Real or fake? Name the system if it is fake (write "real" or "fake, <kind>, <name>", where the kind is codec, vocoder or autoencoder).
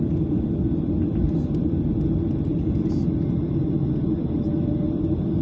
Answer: real